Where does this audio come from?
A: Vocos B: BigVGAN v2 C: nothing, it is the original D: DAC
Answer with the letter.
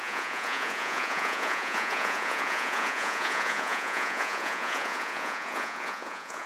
A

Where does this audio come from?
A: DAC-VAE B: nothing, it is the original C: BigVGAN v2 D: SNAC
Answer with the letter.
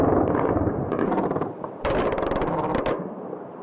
C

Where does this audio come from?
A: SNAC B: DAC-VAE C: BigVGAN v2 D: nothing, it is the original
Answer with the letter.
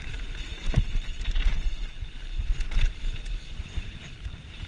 C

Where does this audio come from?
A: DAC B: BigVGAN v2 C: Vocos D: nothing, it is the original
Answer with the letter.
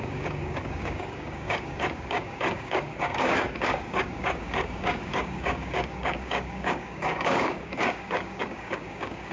A